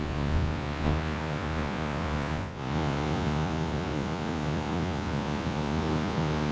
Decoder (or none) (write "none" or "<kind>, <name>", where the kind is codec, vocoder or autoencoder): vocoder, Vocos